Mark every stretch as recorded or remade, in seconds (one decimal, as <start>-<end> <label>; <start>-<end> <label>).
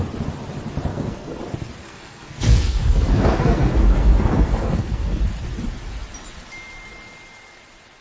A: 0.0-0.9 recorded; 0.9-1.4 remade; 1.4-1.8 recorded; 1.8-5.2 remade; 5.2-8.0 recorded